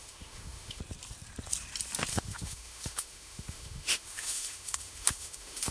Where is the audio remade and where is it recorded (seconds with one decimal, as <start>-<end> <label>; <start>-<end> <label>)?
0.0-0.8 remade; 0.8-2.1 recorded; 2.1-5.7 remade